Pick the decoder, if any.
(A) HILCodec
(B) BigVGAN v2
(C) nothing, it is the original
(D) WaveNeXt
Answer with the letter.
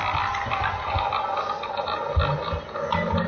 C